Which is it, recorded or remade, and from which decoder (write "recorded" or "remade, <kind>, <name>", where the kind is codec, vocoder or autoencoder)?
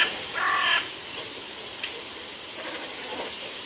recorded